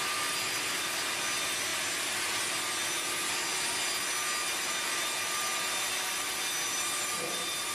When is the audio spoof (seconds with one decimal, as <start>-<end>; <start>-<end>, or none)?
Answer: none